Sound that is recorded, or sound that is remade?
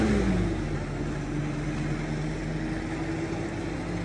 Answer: recorded